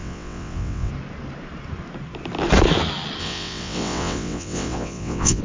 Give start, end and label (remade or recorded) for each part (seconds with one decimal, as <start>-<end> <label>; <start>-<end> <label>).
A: 0.0-0.9 remade; 0.9-3.2 recorded; 3.2-5.4 remade